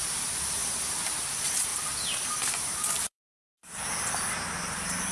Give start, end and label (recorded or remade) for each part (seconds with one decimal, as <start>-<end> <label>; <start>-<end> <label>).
0.0-1.7 recorded; 1.7-3.2 remade; 3.2-5.1 recorded